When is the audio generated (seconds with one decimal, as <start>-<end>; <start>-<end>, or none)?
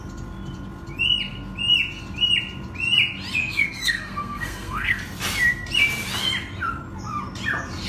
3.4-5.0